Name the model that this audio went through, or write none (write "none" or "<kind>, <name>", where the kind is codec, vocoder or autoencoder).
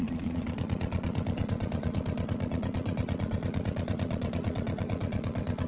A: vocoder, Vocos